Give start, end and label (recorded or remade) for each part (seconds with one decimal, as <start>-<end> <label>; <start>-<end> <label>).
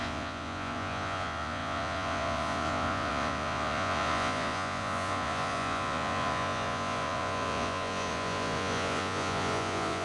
0.0-10.0 remade